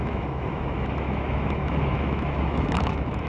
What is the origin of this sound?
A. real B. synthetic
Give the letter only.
B